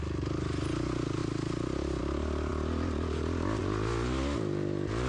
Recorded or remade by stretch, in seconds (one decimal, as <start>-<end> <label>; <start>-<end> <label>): 0.0-5.1 recorded